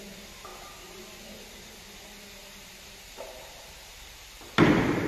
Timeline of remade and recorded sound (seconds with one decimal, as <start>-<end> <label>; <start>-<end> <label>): 0.0-5.1 recorded